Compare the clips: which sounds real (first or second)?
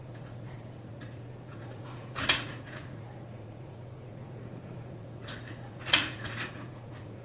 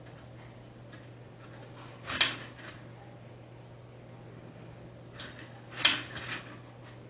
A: second